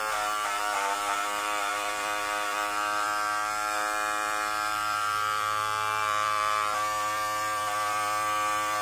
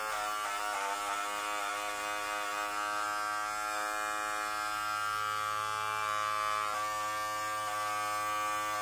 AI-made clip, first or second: first